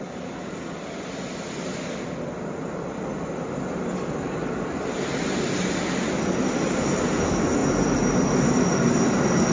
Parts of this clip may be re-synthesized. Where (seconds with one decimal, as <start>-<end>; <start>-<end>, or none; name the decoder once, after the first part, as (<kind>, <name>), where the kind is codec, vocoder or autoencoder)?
none